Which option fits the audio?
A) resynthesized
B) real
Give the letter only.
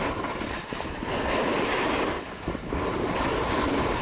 A